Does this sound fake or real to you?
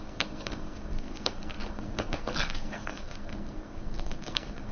fake